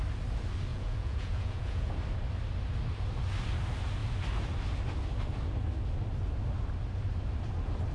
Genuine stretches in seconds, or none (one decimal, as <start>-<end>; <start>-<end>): 0.0-0.7; 1.9-7.9